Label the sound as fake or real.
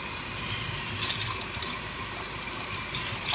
real